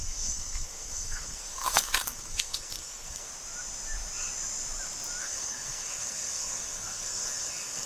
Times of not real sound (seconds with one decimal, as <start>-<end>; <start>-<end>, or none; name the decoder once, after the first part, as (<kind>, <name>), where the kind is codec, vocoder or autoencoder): 0.0-3.3 (codec, SNAC); 5.2-7.9